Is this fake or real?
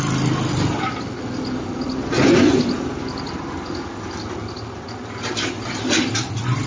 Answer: real